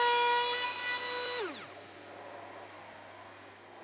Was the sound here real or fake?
real